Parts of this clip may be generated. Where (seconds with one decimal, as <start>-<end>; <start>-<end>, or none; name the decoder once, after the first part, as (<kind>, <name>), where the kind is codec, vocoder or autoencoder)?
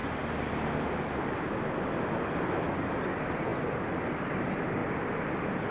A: none